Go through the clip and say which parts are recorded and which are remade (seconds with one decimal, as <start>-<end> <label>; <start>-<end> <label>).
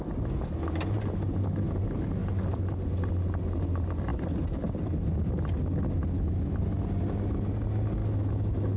0.0-8.0 recorded; 8.0-8.8 remade